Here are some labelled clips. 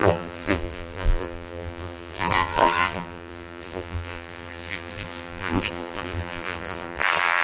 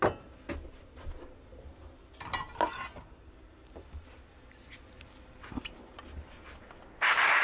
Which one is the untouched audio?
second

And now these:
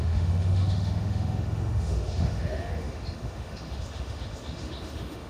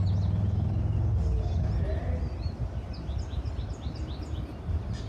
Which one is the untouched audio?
second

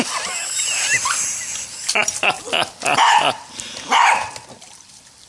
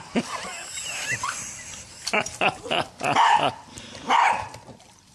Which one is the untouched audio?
first